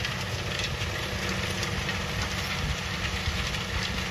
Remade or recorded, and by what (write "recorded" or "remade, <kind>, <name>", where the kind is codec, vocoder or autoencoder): recorded